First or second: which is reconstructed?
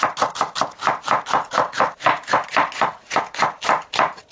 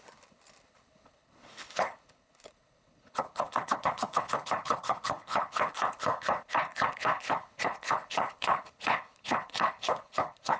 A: second